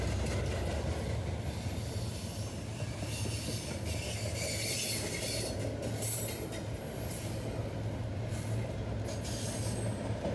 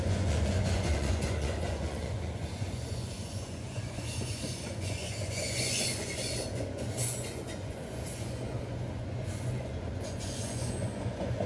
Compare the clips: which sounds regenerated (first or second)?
second